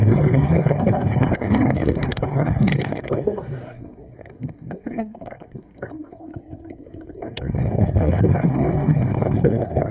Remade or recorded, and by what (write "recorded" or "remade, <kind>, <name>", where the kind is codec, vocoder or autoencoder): remade, codec, SNAC